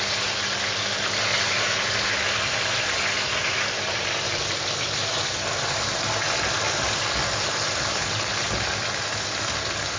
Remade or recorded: recorded